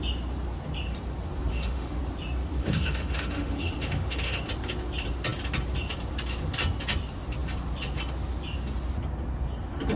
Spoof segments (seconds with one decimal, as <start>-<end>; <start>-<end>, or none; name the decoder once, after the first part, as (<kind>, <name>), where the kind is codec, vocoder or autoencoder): 1.5-2.0 (autoencoder, DAC-VAE); 2.6-4.4